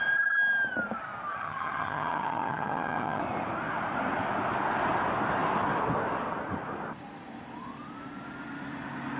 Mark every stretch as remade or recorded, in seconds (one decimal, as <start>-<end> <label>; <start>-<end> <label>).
0.0-1.3 recorded; 1.3-3.2 remade; 3.2-9.2 recorded